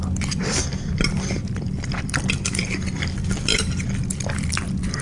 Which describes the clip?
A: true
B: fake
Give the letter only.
B